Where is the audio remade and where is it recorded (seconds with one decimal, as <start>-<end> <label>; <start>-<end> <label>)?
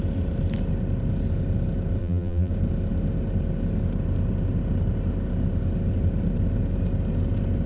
0.0-2.0 recorded; 2.0-2.5 remade; 2.5-7.7 recorded